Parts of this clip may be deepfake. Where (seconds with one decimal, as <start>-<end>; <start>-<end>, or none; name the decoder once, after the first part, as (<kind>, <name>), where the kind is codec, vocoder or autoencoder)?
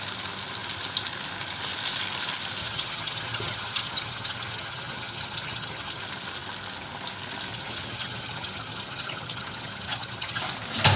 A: 2.6-6.0 (vocoder, HiFi-GAN); 7.5-10.4